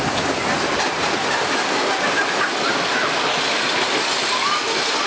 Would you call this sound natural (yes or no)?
yes